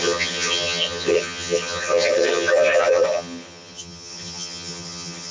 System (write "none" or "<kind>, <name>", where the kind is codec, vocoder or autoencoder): vocoder, HiFi-GAN